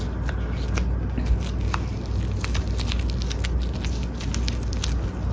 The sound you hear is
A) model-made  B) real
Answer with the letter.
B